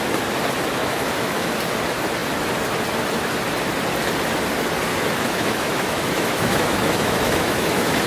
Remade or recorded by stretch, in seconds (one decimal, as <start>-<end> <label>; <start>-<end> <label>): 0.0-0.8 recorded; 0.8-1.6 remade; 1.6-4.9 recorded; 4.9-8.1 remade